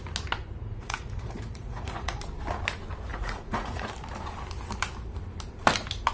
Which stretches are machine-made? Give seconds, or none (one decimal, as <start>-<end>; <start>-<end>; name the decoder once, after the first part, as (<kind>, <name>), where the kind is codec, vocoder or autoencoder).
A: 0.6-2.2 (vocoder, Vocos); 3.1-3.9